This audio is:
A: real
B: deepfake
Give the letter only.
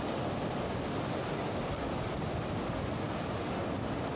A